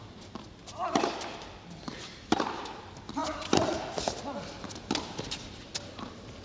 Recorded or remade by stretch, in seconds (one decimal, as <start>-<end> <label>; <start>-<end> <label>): 0.0-6.4 recorded